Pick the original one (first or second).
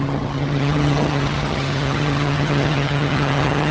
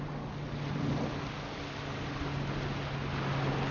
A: second